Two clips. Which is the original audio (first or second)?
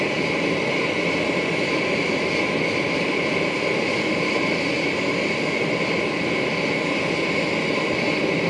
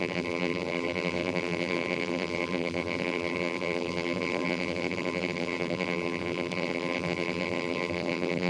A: first